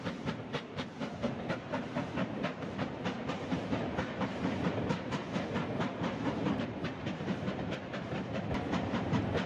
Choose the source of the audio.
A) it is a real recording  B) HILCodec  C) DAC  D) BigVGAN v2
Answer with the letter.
D